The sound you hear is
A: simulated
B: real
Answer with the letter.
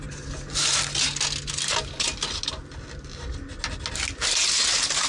B